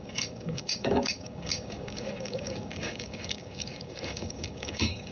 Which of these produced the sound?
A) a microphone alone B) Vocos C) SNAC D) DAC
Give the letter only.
D